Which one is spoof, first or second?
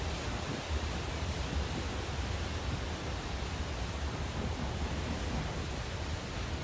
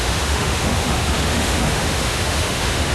second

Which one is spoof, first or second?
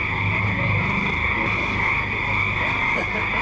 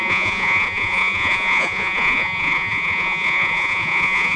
second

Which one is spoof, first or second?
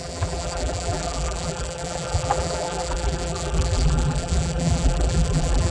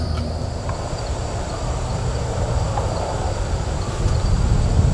first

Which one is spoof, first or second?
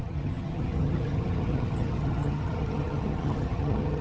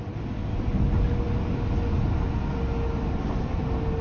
first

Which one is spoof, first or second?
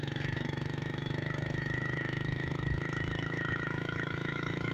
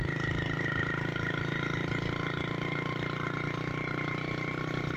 first